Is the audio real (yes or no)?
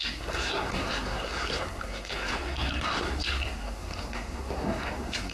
no